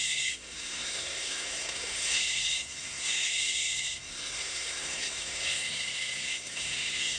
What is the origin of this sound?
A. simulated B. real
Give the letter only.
A